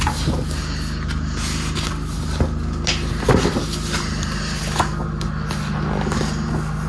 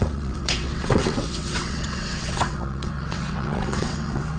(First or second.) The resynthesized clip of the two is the second